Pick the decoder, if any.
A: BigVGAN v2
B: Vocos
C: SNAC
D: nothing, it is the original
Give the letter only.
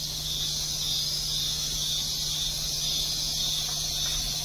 D